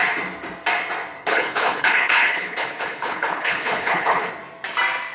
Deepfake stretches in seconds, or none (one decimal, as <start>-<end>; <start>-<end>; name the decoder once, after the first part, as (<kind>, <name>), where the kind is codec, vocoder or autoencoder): 1.2-4.3 (codec, HILCodec)